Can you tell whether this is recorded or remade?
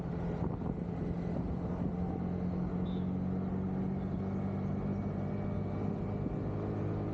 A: recorded